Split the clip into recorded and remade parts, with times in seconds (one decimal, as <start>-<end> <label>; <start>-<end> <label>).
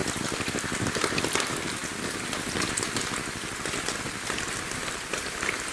0.0-5.7 recorded